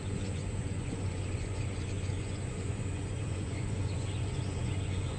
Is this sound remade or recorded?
remade